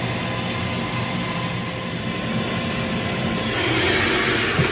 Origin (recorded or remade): recorded